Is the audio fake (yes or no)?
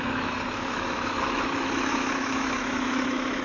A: yes